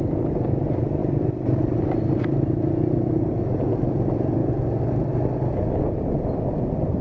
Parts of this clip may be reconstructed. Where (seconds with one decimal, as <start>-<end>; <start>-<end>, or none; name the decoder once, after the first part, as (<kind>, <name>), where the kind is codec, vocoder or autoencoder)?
none